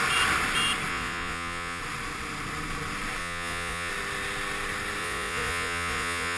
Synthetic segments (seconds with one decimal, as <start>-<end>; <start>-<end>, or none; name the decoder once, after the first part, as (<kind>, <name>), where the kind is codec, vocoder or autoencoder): 0.9-1.8 (vocoder, Vocos); 3.2-3.9; 5.0-6.4